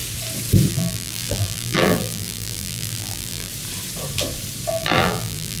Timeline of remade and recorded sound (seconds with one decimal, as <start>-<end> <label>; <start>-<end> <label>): 0.0-0.7 recorded; 0.7-3.5 remade; 3.5-4.7 recorded; 4.7-5.6 remade